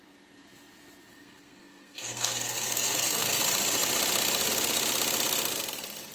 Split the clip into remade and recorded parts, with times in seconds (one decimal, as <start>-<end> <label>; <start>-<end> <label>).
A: 0.0-1.1 recorded; 1.1-3.4 remade; 3.4-6.1 recorded